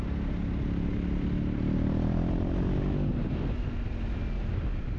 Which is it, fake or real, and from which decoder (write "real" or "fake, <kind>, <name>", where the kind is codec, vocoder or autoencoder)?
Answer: real